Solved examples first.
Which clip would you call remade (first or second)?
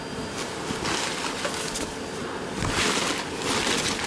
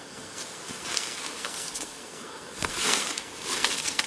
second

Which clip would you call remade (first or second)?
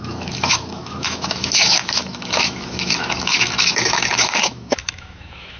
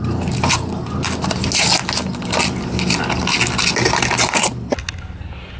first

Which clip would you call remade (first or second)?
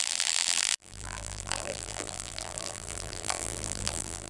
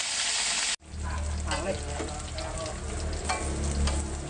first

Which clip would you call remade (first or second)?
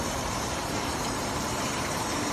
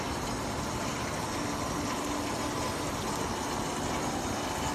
first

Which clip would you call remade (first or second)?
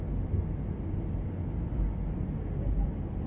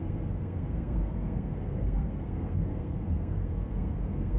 second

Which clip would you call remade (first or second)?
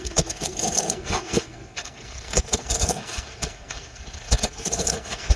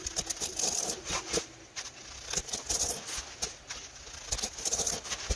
first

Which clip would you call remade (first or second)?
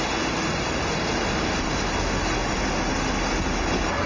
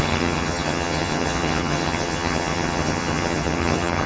second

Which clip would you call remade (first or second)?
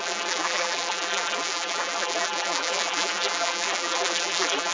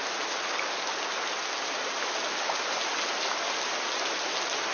first